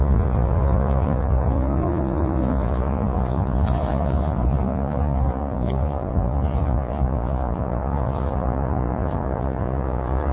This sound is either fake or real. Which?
fake